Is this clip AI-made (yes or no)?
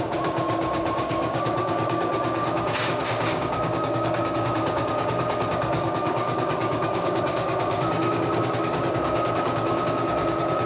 yes